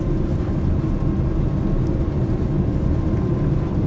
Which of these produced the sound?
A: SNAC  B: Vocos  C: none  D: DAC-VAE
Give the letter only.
C